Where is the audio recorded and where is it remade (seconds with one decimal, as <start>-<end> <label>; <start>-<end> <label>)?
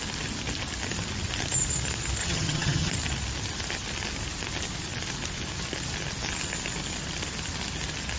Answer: 0.0-2.2 recorded; 2.2-2.9 remade; 2.9-8.2 recorded